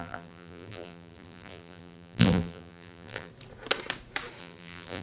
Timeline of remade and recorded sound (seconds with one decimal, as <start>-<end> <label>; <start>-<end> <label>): 0.0-3.3 remade; 3.3-4.4 recorded; 4.4-5.0 remade